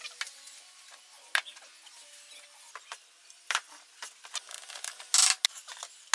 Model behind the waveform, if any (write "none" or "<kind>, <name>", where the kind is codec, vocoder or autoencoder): none